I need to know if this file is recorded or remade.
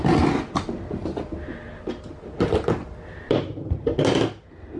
recorded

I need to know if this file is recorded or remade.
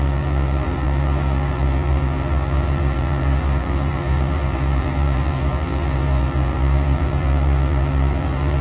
remade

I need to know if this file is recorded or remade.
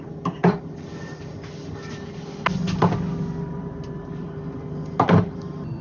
recorded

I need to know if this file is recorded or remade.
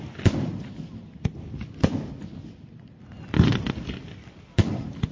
recorded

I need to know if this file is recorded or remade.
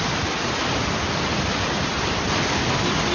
recorded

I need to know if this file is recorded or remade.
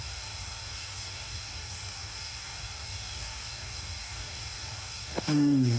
remade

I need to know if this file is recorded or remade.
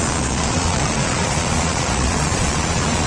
remade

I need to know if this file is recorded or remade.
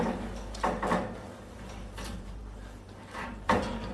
remade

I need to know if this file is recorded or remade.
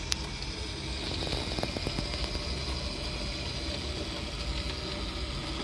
recorded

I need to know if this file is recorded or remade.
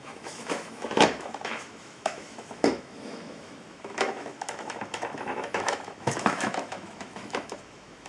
remade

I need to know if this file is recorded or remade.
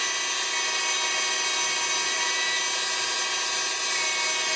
recorded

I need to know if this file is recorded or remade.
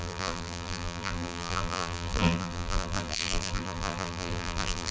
remade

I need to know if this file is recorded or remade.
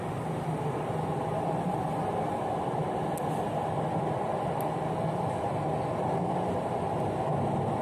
recorded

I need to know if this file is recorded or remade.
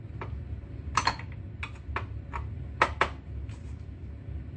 recorded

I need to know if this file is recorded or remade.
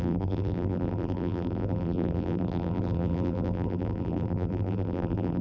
remade